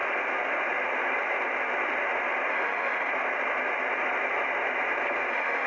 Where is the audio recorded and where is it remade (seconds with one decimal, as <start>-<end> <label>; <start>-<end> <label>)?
0.0-2.5 recorded; 2.5-3.1 remade; 3.1-5.3 recorded; 5.3-5.7 remade